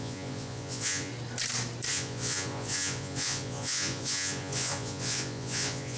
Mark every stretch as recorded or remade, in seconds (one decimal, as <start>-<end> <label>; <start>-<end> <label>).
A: 0.0-1.1 remade; 1.1-1.9 recorded; 1.9-6.0 remade